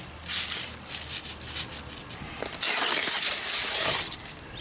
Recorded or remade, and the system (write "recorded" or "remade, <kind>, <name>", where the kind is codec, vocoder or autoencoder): recorded